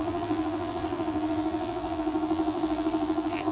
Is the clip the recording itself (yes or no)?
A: no